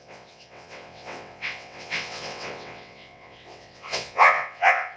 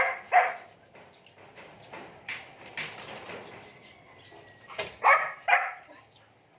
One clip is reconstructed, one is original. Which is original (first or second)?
second